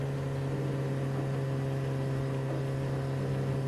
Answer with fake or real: real